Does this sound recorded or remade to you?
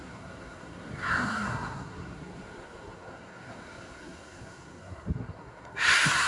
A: remade